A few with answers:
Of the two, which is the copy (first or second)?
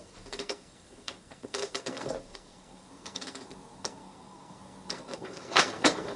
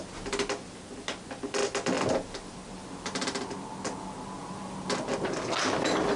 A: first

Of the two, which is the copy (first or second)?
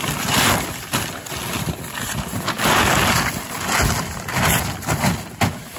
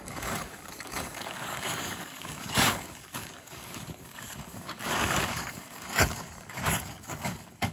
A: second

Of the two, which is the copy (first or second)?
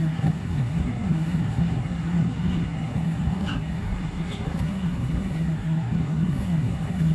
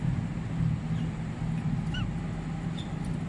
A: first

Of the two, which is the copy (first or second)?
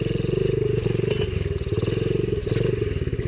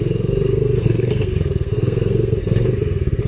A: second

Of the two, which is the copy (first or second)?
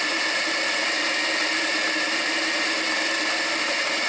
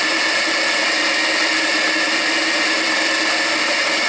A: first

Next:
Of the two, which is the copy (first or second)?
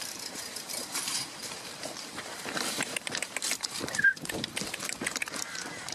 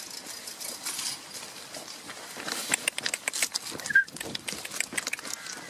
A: first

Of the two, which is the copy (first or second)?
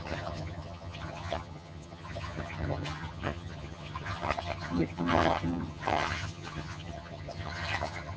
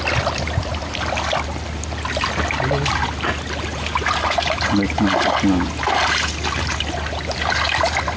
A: first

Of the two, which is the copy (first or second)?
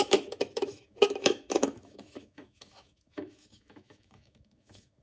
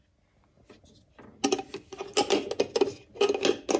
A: first